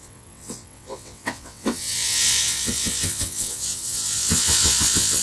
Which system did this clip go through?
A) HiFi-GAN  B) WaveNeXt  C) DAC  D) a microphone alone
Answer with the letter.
B